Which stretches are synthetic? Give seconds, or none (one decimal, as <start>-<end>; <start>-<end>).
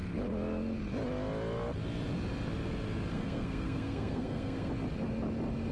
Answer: 3.1-4.7